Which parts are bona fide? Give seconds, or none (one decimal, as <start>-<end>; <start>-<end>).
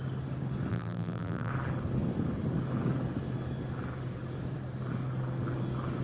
0.0-0.7; 1.5-6.0